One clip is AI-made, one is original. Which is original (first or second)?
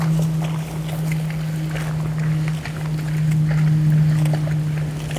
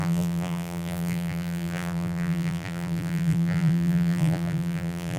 first